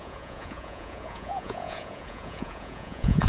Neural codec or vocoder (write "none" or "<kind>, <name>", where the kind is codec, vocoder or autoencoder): vocoder, Vocos